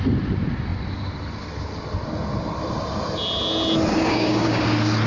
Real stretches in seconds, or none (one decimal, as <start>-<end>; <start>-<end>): 0.0-3.9; 4.6-5.1